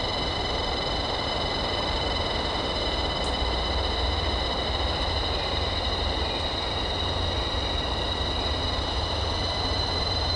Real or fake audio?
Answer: fake